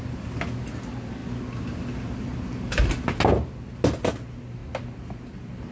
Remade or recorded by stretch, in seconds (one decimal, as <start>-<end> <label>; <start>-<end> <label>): 0.0-5.7 recorded